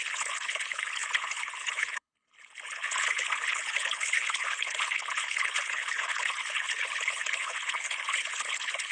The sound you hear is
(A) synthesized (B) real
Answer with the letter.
A